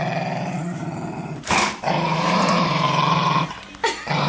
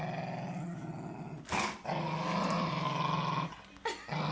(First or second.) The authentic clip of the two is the second